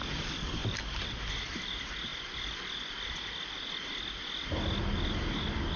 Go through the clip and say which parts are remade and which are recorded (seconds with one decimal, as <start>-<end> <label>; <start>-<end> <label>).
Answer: 0.0-5.8 recorded